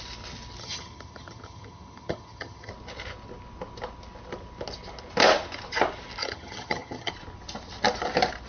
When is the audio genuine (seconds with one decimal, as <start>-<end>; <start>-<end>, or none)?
0.0-0.6; 2.7-6.2; 7.1-8.5